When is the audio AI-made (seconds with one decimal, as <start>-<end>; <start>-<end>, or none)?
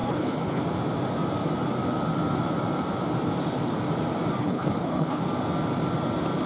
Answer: 0.0-0.6; 4.4-5.2